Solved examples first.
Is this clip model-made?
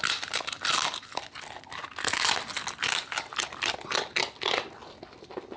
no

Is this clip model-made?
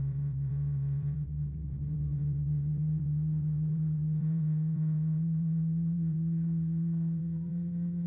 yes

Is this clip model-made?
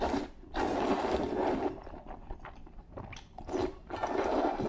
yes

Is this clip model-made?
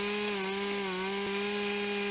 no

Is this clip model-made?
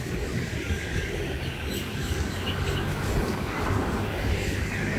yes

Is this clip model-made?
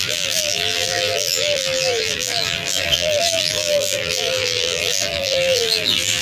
yes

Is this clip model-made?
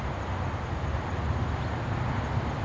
no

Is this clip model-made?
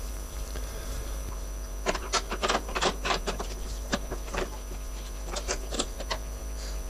yes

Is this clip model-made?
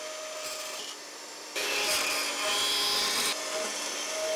no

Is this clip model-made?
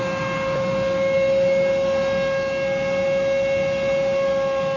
no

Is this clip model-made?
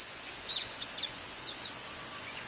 yes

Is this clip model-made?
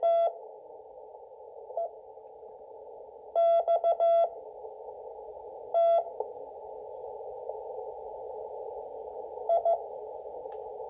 no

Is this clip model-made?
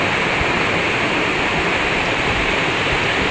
yes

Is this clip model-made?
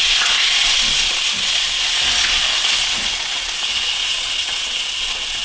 yes